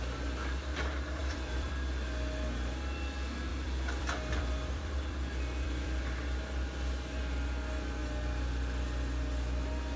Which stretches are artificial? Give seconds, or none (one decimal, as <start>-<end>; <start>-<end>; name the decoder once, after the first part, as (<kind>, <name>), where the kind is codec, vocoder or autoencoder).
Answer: 1.2-1.7 (vocoder, BigVGAN v2); 3.5-6.0